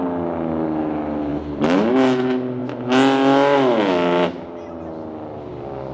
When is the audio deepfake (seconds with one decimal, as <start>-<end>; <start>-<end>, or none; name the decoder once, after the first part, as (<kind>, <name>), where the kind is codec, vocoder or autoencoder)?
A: none

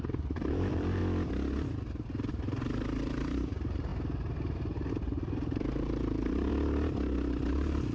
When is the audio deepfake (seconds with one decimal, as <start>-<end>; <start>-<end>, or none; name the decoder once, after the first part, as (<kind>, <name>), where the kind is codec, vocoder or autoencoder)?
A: 0.0-1.0 (vocoder, BigVGAN v2); 2.3-3.9; 4.9-6.5; 7.5-7.9

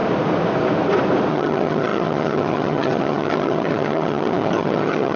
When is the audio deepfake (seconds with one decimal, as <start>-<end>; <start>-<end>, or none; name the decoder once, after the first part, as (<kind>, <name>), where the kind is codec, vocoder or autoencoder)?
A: 1.3-5.2 (vocoder, HiFi-GAN)

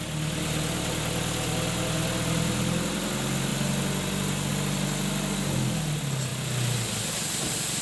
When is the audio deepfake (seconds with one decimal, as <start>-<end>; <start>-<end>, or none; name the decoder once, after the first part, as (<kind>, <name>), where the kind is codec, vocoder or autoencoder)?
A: none

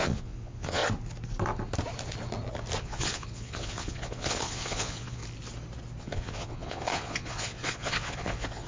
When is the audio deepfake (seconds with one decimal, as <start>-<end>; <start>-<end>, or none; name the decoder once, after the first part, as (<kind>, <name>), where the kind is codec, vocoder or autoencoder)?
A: 0.0-0.8 (vocoder, Vocos); 2.8-5.2; 6.0-8.7

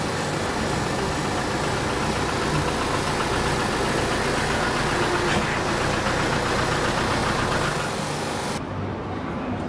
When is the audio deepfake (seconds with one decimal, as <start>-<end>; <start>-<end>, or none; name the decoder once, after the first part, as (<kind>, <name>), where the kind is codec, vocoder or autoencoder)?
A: none

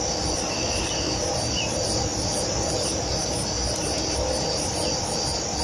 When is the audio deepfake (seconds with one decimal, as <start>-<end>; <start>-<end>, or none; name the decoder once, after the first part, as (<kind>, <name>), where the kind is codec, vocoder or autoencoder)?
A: none